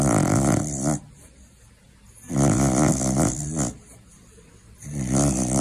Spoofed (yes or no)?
no